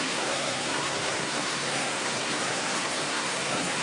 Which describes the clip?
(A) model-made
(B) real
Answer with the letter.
A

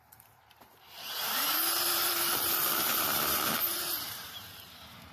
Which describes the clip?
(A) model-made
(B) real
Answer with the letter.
A